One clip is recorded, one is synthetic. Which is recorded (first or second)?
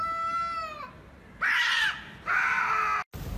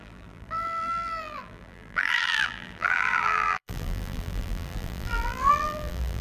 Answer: first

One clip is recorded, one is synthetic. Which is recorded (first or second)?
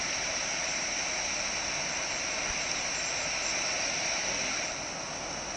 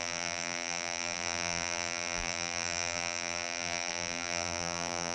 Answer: first